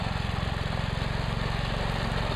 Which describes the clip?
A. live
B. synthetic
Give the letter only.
A